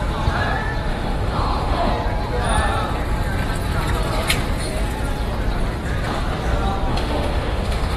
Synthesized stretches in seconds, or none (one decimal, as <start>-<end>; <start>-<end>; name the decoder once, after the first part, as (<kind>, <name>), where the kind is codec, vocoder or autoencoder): 0.9-1.9 (autoencoder, DAC-VAE); 6.9-8.0